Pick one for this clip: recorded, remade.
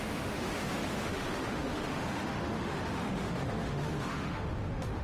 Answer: remade